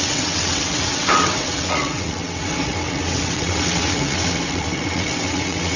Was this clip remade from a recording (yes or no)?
yes